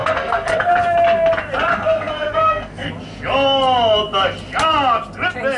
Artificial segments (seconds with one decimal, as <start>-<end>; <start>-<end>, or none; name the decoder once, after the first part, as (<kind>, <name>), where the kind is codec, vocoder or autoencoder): 0.0-0.7 (codec, SNAC); 1.7-2.9